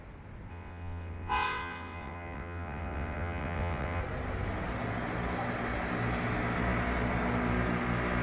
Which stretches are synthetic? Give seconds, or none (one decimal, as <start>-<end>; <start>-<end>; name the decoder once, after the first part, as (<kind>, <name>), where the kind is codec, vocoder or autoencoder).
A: 0.5-4.0 (vocoder, WaveNeXt)